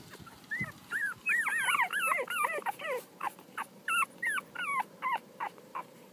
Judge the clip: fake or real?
fake